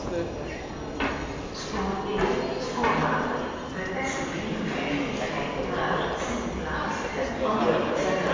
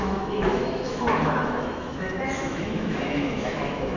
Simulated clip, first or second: second